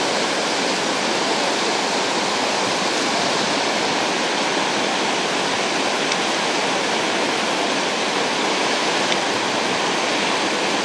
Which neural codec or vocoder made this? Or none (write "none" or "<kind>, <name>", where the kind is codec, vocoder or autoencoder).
none